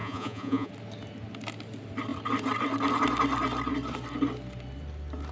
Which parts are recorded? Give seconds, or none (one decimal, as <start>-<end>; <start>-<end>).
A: 0.7-5.3